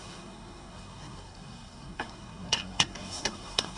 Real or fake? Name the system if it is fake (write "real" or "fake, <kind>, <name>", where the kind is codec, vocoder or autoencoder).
fake, codec, SNAC